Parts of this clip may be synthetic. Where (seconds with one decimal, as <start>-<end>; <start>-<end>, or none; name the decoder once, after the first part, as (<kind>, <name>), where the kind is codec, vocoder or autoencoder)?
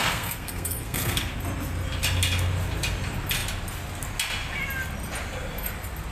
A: 0.0-1.3 (codec, SNAC)